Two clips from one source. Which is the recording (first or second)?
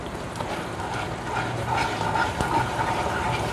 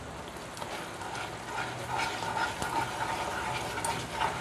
second